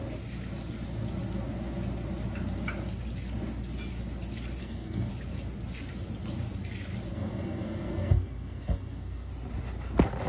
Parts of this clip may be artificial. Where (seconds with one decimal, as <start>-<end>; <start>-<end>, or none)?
4.6-5.1; 7.1-9.3